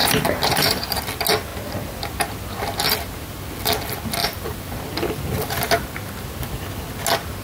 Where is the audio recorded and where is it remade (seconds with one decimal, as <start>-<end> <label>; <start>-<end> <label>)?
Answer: 0.0-1.0 remade; 1.0-4.2 recorded; 4.2-4.8 remade; 4.8-7.4 recorded